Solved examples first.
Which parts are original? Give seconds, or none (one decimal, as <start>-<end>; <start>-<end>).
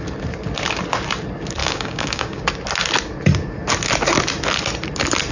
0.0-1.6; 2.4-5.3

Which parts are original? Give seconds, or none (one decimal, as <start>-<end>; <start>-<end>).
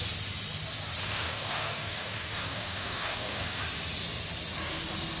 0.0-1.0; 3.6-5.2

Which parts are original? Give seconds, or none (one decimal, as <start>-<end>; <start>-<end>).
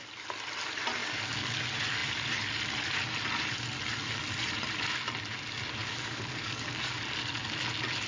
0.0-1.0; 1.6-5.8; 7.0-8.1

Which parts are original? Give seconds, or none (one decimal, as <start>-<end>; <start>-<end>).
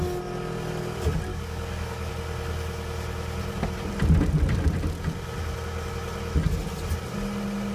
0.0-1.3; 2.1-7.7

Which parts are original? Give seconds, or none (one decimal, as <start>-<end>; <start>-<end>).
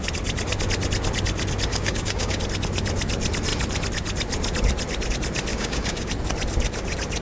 0.0-1.7; 2.4-5.5; 6.1-7.2